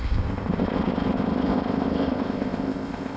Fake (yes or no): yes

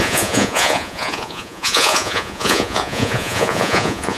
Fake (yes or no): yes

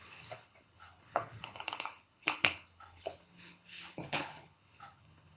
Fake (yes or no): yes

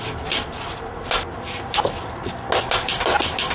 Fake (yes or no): no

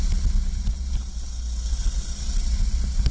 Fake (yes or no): no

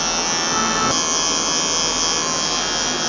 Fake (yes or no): no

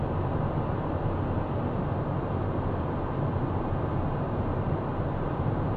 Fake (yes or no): no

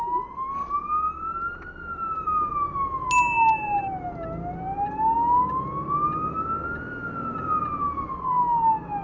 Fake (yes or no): no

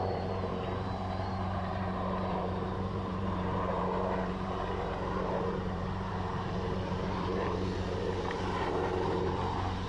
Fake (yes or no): yes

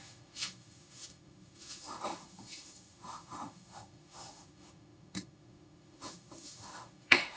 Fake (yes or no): yes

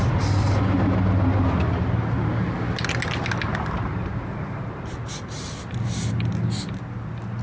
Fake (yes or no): no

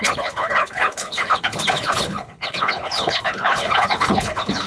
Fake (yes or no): yes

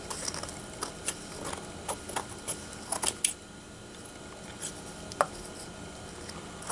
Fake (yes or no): no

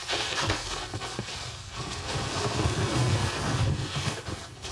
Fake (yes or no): yes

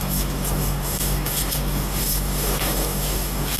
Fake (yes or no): yes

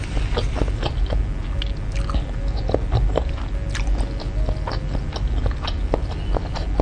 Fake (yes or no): no